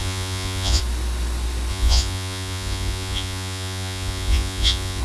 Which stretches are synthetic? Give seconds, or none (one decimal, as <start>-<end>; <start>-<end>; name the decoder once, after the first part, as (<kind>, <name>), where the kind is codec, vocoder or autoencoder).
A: 0.0-0.8 (vocoder, Vocos); 1.7-5.0